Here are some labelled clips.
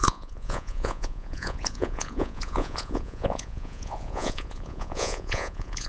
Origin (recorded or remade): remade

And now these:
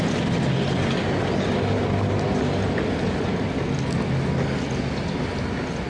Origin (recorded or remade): recorded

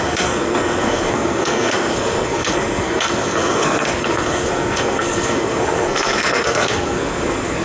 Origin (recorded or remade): remade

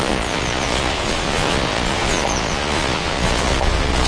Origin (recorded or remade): remade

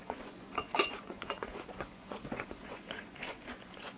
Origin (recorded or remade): remade